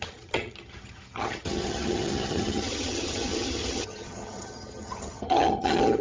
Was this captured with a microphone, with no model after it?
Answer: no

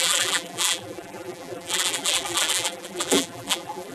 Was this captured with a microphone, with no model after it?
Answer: no